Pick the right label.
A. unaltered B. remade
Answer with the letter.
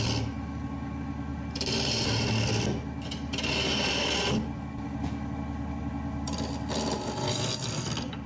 A